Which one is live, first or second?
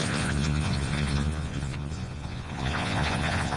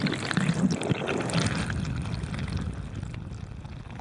second